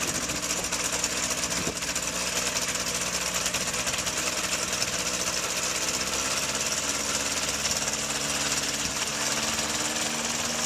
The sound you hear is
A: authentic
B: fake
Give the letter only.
A